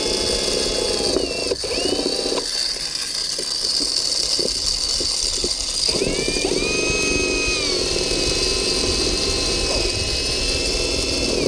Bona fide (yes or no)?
yes